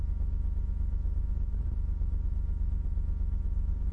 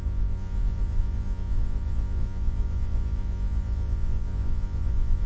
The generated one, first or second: second